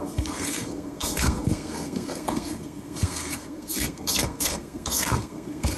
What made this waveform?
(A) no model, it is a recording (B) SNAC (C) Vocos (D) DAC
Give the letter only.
B